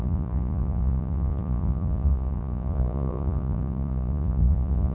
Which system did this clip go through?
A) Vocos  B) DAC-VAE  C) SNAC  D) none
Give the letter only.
A